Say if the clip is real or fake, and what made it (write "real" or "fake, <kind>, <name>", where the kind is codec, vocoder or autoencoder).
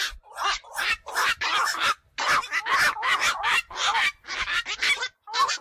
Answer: real